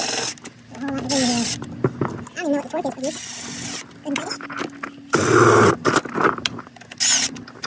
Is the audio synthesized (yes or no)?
no